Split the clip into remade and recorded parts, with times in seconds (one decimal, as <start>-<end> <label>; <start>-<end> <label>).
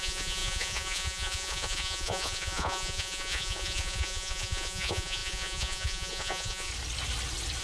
0.0-6.7 remade; 6.7-7.6 recorded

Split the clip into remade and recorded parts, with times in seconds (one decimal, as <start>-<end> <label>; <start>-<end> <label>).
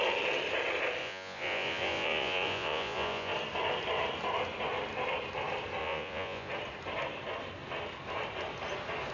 0.0-1.0 recorded; 1.0-3.3 remade; 3.3-5.8 recorded; 5.8-6.5 remade; 6.5-9.1 recorded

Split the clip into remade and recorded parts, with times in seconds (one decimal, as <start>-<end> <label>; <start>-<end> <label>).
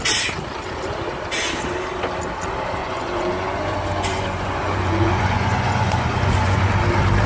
0.0-2.8 recorded; 2.8-6.7 remade; 6.7-7.3 recorded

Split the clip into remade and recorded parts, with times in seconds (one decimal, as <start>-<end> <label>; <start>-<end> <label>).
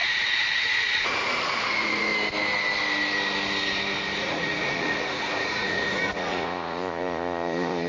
0.0-2.1 remade; 2.1-4.2 recorded; 4.2-7.9 remade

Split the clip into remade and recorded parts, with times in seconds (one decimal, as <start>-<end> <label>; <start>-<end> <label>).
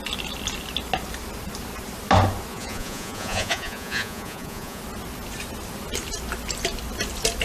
0.0-2.5 recorded; 2.5-4.8 remade; 4.8-7.4 recorded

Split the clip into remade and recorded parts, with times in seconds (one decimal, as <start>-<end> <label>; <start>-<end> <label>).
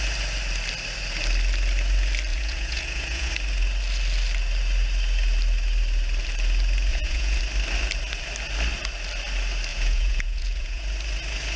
0.0-2.3 recorded; 2.3-3.3 remade; 3.3-6.9 recorded; 6.9-7.4 remade; 7.4-9.7 recorded; 9.7-10.8 remade; 10.8-11.6 recorded